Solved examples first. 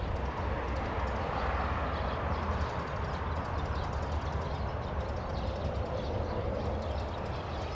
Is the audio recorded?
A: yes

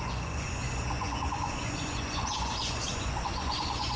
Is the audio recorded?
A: no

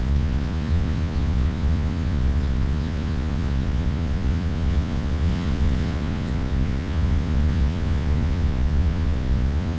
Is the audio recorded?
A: no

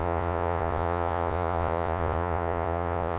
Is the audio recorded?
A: no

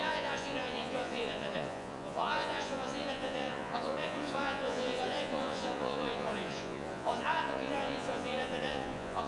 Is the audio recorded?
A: no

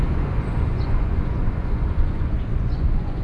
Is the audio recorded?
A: no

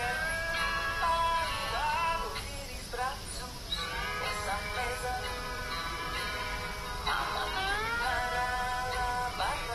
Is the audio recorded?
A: yes